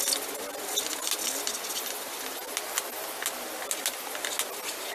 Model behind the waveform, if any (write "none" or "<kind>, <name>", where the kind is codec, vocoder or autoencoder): none